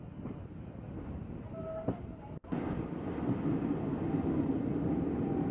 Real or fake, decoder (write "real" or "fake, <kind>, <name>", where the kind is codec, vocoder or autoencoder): real